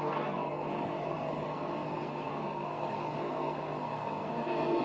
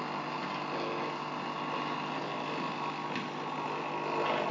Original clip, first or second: second